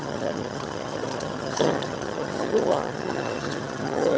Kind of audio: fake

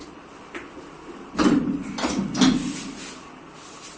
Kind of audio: real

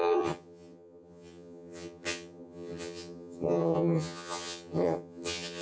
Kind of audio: fake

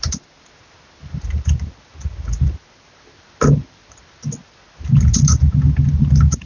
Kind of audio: real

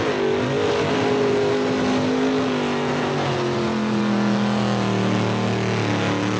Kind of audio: real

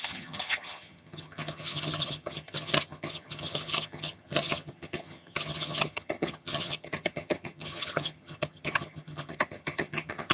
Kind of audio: fake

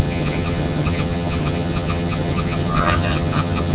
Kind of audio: fake